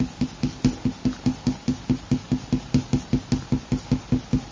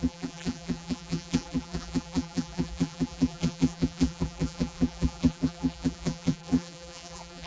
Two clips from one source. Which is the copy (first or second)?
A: second